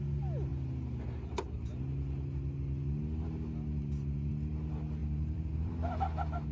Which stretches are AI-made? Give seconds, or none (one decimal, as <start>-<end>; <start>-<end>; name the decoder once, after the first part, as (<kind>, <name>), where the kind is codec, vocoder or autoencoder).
5.0-5.7 (vocoder, BigVGAN v2)

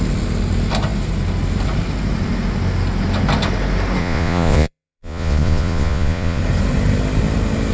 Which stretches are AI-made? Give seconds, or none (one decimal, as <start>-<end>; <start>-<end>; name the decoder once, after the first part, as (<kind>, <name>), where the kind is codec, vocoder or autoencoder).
4.0-6.4 (vocoder, Vocos)

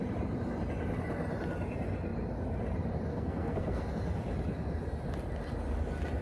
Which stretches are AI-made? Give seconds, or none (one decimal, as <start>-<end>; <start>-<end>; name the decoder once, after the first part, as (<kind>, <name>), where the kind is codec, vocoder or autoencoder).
3.1-3.9 (codec, SNAC)

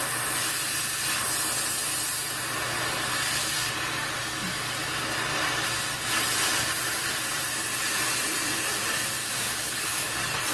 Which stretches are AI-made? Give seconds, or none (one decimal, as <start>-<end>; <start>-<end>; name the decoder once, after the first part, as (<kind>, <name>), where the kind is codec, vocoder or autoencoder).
9.2-10.1 (codec, DAC)

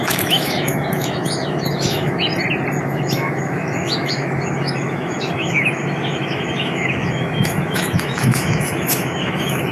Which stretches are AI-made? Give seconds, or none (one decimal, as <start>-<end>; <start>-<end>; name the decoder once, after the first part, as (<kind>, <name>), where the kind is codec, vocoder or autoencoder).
0.0-2.3 (autoencoder, DAC-VAE); 2.8-9.7

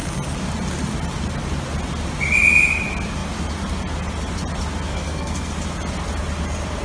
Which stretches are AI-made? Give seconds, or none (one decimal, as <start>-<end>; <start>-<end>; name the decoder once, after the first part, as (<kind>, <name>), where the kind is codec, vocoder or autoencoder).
4.9-5.5 (codec, SNAC)

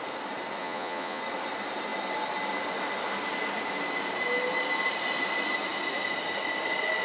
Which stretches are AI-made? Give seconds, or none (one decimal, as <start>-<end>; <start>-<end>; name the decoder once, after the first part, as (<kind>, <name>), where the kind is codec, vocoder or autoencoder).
0.6-1.2 (vocoder, Vocos)

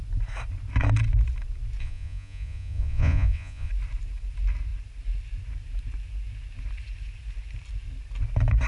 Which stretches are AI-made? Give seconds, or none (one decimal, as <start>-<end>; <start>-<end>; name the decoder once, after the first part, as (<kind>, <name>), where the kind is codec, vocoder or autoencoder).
1.8-3.7 (vocoder, Vocos)